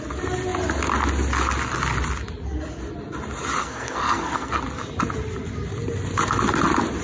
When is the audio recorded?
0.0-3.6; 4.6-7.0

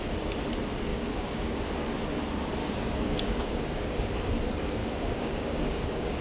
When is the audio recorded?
0.0-0.9; 1.7-2.6; 4.1-4.8

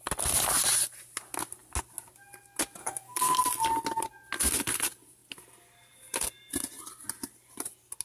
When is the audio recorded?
0.0-2.8; 3.4-8.0

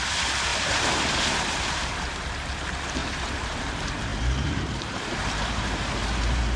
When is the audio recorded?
0.0-0.5; 1.9-3.0; 3.5-4.1

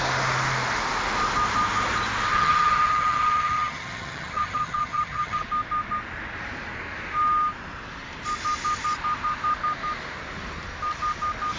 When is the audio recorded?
0.0-2.3; 5.4-11.6

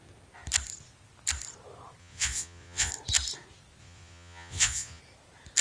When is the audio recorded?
0.0-2.0; 2.9-3.8; 5.0-5.6

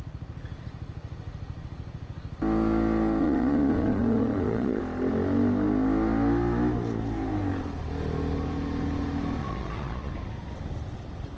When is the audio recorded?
0.0-3.2; 4.8-9.4; 10.1-11.4

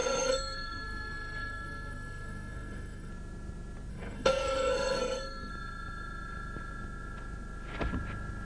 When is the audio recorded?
3.1-3.9; 5.5-8.4